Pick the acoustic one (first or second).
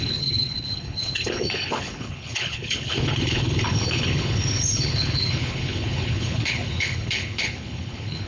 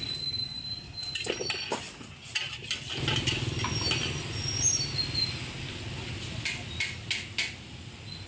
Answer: second